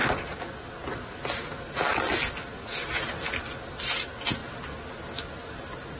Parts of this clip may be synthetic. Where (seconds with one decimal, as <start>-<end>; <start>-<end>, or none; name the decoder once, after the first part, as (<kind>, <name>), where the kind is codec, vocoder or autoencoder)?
1.5-2.2 (vocoder, BigVGAN v2); 4.4-5.0